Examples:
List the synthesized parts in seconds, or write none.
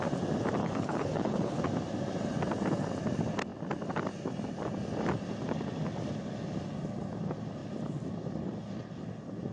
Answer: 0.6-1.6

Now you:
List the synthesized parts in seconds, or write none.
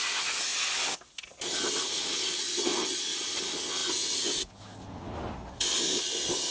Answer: none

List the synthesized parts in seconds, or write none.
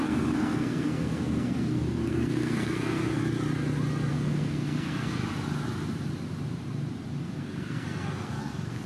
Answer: 0.0-3.2; 4.1-5.2; 7.2-8.9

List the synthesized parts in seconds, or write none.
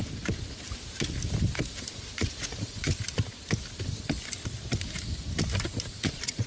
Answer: 1.9-2.9; 5.9-6.5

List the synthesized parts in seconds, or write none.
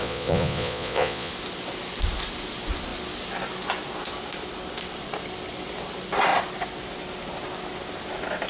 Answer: 0.0-1.3